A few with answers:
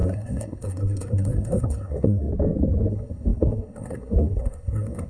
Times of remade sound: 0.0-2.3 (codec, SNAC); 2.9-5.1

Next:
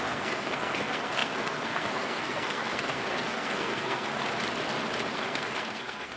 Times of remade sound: 0.0-4.1 (codec, SNAC); 5.1-6.2

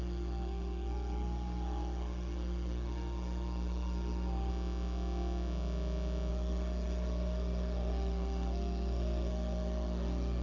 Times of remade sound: 0.0-4.5 (codec, SNAC); 6.3-10.4

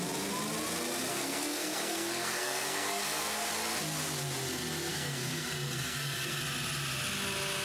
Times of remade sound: 1.1-3.5 (codec, SNAC); 4.9-6.4